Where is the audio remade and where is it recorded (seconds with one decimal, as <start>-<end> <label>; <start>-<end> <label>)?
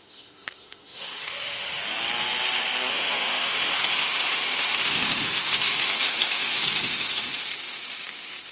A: 0.0-1.8 remade; 1.8-2.9 recorded; 2.9-8.5 remade